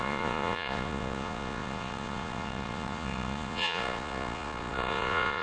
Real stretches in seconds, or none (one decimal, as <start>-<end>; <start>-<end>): none